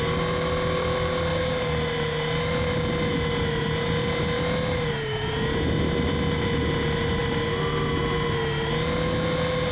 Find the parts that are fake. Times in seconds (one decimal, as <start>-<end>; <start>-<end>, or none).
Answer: none